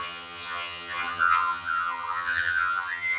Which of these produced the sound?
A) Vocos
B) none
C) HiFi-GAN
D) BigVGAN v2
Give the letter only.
C